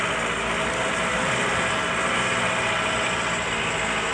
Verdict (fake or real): real